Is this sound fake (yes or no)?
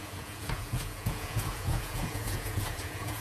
yes